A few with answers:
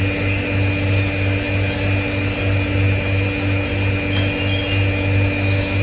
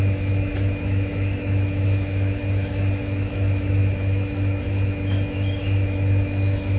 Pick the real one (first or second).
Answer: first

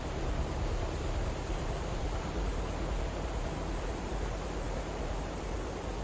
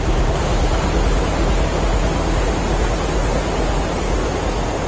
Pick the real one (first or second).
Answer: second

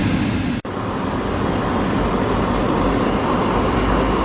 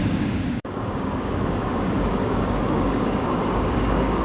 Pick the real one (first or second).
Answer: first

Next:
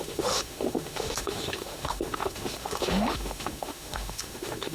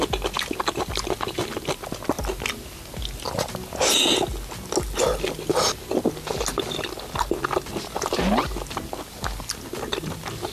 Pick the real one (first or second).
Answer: second